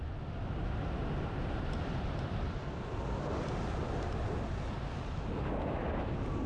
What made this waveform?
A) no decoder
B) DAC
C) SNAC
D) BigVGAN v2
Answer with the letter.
A